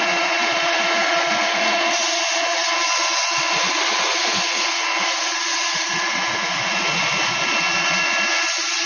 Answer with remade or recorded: remade